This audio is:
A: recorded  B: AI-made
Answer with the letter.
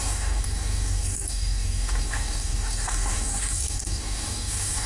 B